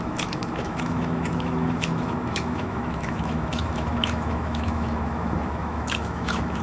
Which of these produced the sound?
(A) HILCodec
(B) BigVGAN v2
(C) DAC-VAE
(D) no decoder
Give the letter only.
C